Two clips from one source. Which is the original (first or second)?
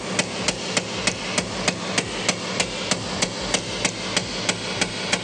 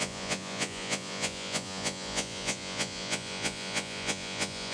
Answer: first